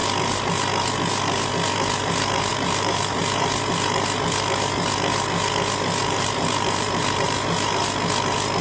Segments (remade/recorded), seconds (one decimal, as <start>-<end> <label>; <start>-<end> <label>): 0.0-2.5 recorded; 2.5-3.2 remade; 3.2-6.0 recorded; 6.0-7.8 remade; 7.8-8.6 recorded